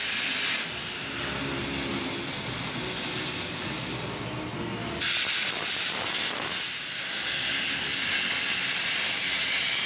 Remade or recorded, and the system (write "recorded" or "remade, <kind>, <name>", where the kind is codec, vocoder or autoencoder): recorded